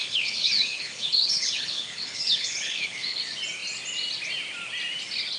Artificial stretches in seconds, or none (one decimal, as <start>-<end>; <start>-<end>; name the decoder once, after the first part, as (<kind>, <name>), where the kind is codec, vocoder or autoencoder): 0.0-3.2 (codec, HILCodec)